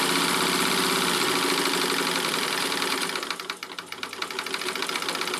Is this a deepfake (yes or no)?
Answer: no